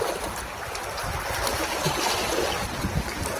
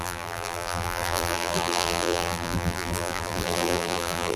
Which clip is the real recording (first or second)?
first